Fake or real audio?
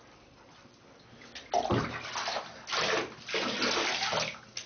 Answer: real